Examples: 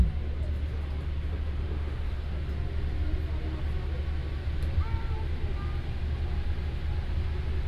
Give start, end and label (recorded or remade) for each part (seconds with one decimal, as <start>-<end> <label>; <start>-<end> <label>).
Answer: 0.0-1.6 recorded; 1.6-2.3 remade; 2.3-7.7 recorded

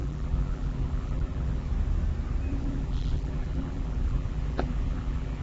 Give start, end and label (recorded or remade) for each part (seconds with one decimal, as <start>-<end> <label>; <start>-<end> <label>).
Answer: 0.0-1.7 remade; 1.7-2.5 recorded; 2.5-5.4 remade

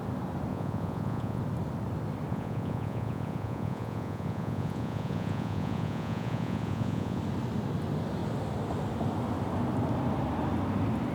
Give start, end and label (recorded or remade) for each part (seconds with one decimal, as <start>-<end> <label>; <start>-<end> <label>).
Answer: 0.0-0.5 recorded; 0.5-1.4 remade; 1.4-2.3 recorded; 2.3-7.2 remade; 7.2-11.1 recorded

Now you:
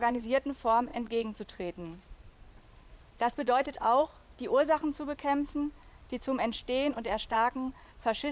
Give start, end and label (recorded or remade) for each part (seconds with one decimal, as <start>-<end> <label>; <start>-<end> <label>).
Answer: 0.0-4.2 remade; 4.2-6.9 recorded; 6.9-8.3 remade

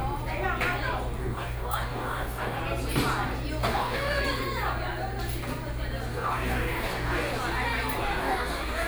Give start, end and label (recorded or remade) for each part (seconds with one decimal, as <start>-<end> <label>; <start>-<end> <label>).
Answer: 0.0-1.2 recorded; 1.2-2.6 remade; 2.6-3.6 recorded; 3.6-4.2 remade; 4.2-6.1 recorded; 6.1-7.3 remade; 7.3-8.2 recorded; 8.2-8.9 remade

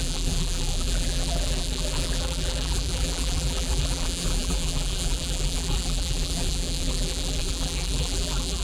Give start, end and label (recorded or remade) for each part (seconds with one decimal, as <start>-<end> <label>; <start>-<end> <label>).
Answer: 0.0-8.6 remade

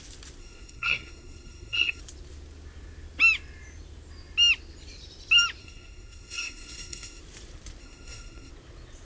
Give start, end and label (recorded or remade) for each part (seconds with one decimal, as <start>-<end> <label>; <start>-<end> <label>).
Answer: 0.0-0.4 recorded; 0.4-2.0 remade; 2.0-5.6 recorded; 5.6-7.2 remade; 7.2-7.8 recorded; 7.8-8.5 remade; 8.5-9.0 recorded

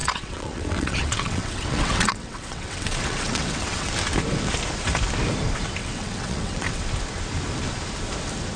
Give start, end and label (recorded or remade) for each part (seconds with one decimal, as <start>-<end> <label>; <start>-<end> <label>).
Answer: 0.0-3.9 remade; 3.9-5.8 recorded; 5.8-6.8 remade; 6.8-8.6 recorded